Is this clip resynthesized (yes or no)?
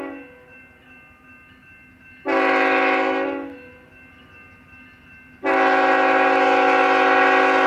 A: no